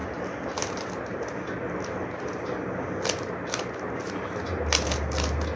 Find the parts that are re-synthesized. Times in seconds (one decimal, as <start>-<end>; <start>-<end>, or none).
none